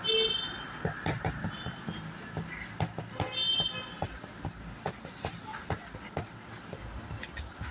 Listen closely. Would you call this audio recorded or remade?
recorded